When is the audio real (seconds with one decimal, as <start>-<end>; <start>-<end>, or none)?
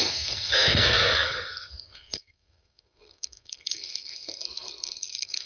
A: none